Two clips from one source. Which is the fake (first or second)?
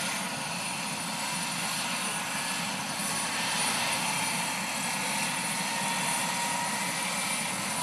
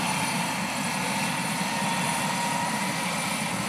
second